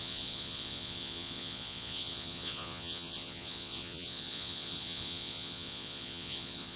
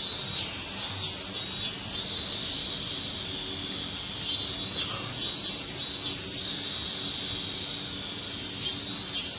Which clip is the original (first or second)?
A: second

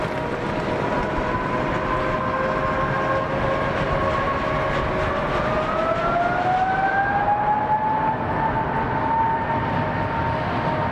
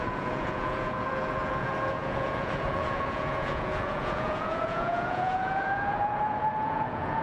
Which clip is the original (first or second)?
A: first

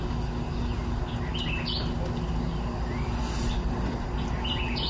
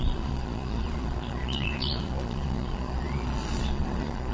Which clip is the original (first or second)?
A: first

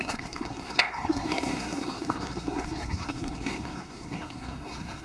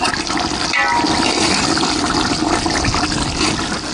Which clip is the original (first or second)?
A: second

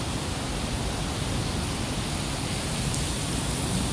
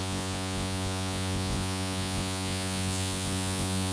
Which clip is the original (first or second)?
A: first